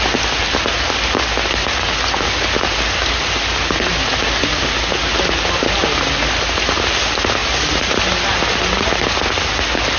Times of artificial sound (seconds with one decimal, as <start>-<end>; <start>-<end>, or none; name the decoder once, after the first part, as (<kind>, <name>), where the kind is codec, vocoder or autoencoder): 7.4-8.0 (vocoder, BigVGAN v2)